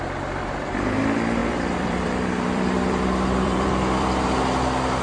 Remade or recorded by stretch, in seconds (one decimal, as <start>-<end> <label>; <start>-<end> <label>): 0.0-1.4 recorded; 1.4-4.4 remade; 4.4-5.0 recorded